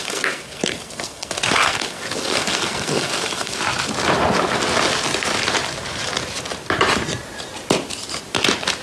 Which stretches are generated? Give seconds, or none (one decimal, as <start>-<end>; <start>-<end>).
0.0-3.6